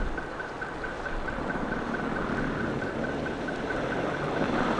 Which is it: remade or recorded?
recorded